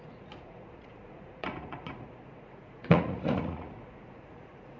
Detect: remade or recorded remade